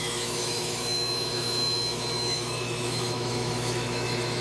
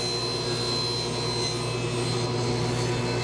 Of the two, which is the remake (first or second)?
first